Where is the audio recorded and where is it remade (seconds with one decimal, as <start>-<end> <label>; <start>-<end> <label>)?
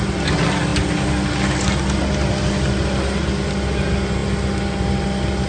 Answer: 0.0-5.5 recorded